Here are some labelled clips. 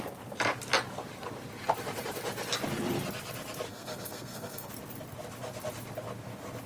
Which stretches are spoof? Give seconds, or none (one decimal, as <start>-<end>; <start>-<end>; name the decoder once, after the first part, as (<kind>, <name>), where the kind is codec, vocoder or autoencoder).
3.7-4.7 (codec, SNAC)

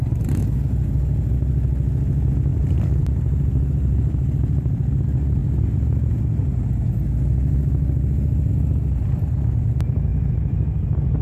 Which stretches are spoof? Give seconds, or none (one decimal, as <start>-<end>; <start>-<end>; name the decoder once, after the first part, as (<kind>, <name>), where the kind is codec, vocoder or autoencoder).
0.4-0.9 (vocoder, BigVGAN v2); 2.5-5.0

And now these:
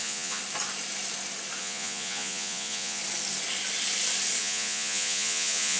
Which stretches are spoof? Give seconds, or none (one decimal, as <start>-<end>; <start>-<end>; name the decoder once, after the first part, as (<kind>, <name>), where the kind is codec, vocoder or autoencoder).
0.0-0.4 (vocoder, Vocos); 1.6-3.0; 4.4-5.8

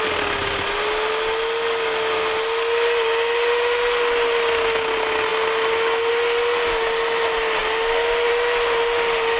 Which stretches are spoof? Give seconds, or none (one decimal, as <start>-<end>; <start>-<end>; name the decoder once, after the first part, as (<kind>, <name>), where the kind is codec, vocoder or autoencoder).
none

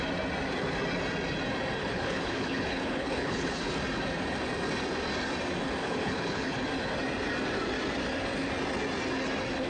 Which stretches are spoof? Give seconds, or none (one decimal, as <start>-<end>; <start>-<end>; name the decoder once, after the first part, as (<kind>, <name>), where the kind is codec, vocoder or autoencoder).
1.8-3.7 (codec, HILCodec); 5.8-6.6